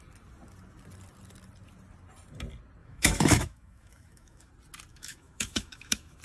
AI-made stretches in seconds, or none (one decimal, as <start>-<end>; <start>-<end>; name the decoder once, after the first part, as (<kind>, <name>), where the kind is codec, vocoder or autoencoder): 2.8-4.5 (autoencoder, DAC-VAE); 4.9-6.2